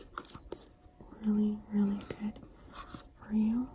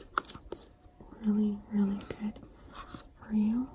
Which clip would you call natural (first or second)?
first